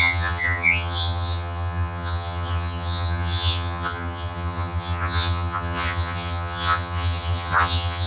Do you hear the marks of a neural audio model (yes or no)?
yes